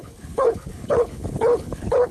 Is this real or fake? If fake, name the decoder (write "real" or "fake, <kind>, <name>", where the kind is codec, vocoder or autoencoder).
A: fake, codec, HILCodec